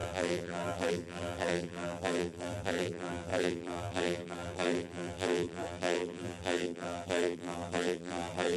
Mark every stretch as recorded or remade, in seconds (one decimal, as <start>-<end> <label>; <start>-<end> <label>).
0.0-8.6 remade